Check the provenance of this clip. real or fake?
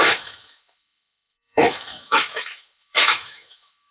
fake